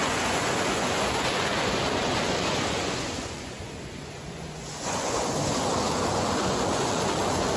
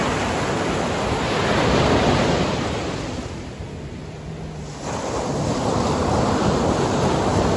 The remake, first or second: first